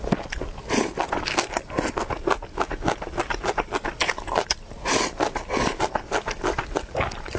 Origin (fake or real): real